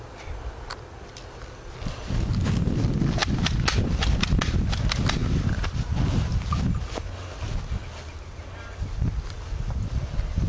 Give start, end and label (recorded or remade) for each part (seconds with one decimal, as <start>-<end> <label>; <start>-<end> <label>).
0.0-10.5 recorded